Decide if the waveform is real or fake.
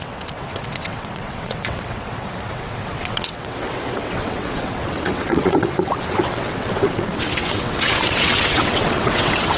fake